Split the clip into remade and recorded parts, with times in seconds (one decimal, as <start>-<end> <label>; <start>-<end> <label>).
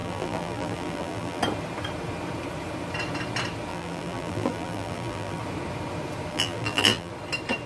0.0-1.4 remade; 1.4-3.7 recorded; 3.7-5.4 remade; 5.4-6.3 recorded; 6.3-7.1 remade; 7.1-7.7 recorded